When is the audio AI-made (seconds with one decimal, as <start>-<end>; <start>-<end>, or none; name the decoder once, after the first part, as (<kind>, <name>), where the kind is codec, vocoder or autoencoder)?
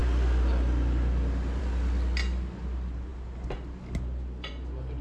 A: none